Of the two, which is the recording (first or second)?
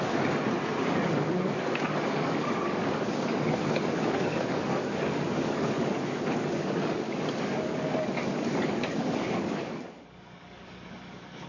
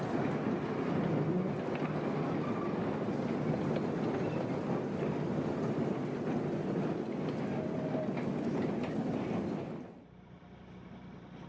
second